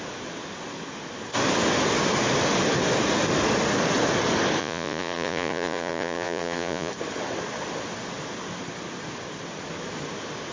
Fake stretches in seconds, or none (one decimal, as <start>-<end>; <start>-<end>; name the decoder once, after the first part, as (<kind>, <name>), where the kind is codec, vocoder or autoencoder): 4.6-6.9 (vocoder, Vocos)